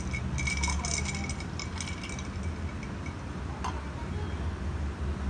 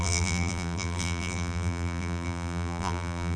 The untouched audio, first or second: first